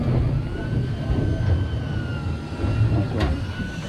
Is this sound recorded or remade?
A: recorded